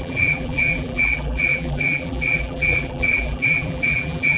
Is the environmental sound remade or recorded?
remade